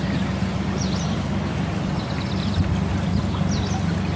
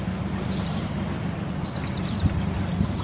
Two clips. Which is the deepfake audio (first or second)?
second